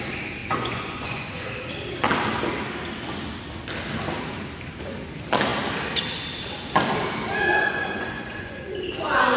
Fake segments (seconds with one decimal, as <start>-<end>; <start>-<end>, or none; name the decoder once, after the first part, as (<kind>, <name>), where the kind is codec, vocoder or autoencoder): 0.4-1.5 (vocoder, Vocos); 7.5-8.8